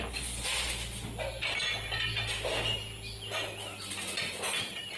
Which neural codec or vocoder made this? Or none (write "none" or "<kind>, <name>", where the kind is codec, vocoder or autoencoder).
none